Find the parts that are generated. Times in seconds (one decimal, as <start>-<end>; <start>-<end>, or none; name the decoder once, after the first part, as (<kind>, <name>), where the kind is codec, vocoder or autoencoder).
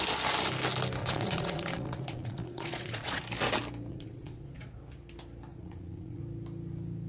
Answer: 1.0-3.2 (vocoder, Vocos); 3.9-4.8; 5.5-6.2